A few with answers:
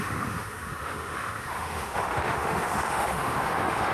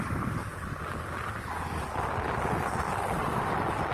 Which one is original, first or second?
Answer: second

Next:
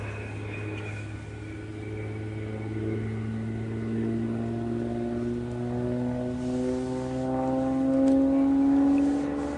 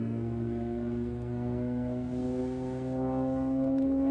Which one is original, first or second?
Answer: first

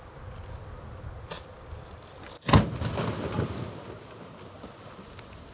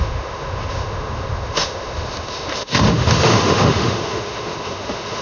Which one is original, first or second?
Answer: first